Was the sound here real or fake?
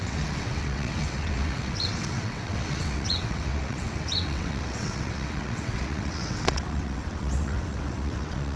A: fake